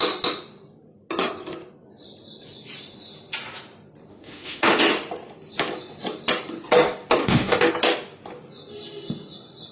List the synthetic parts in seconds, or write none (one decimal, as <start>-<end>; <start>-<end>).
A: 4.1-4.8; 7.2-7.7